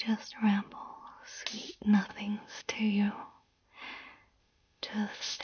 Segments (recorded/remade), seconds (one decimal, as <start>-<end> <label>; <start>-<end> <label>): 0.0-2.1 recorded; 2.1-3.6 remade; 3.6-4.4 recorded; 4.4-5.4 remade